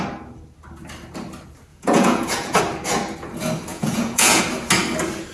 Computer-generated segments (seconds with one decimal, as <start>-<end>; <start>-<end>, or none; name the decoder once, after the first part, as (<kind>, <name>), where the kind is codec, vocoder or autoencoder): 1.7-2.6 (vocoder, Vocos); 3.7-4.4